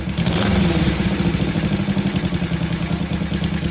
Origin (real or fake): real